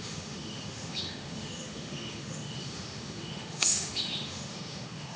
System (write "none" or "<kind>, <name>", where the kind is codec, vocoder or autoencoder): autoencoder, DAC-VAE